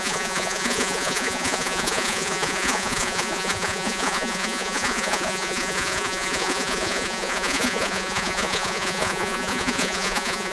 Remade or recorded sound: remade